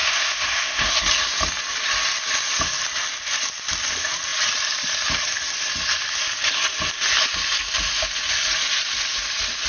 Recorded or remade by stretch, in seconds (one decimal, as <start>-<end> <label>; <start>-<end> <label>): 0.0-1.0 remade; 1.0-9.7 recorded